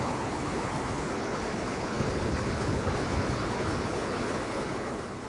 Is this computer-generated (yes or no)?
yes